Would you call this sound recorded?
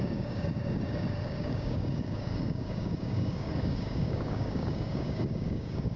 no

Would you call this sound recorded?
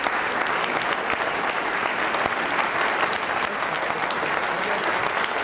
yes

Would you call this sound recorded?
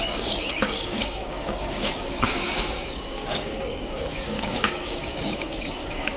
no